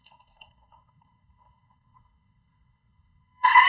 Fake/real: fake